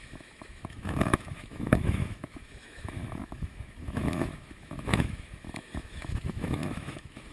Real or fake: fake